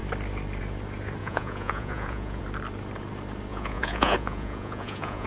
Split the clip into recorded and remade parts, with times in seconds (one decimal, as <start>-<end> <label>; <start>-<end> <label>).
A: 0.0-1.2 recorded; 1.2-2.4 remade; 2.4-3.5 recorded; 3.5-5.3 remade